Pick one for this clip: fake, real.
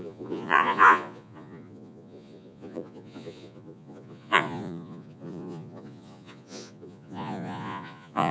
fake